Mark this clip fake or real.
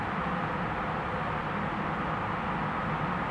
real